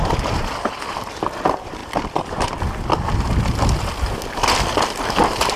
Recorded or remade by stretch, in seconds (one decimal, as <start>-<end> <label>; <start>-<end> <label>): 0.0-5.6 recorded